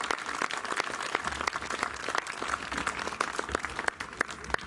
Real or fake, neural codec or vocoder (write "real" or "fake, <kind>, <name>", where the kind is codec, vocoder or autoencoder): real